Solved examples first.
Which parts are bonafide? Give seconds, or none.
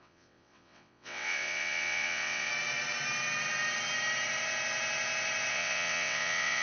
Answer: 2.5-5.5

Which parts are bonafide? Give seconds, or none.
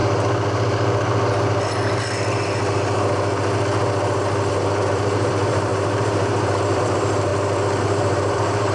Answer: 0.0-4.5; 7.3-7.8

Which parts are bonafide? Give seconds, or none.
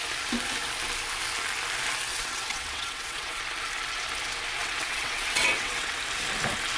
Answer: 0.0-2.1; 3.4-4.6; 6.0-6.8